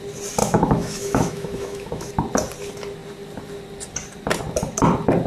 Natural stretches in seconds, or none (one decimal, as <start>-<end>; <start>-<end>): 0.0-0.4; 2.1-5.3